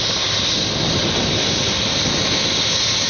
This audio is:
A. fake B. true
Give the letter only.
B